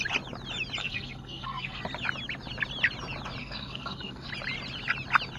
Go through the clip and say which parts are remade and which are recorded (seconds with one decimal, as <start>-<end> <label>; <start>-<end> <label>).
0.0-0.8 recorded; 0.8-1.8 remade; 1.8-3.4 recorded; 3.4-4.3 remade; 4.3-5.4 recorded